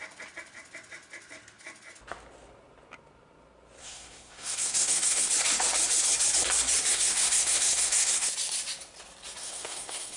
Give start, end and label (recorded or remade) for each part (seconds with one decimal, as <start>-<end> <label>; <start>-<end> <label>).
0.0-3.8 recorded; 3.8-5.3 remade; 5.3-6.9 recorded; 6.9-8.3 remade; 8.3-9.4 recorded; 9.4-10.2 remade